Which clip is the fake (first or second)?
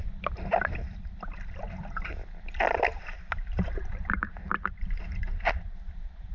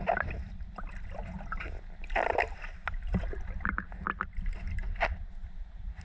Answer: first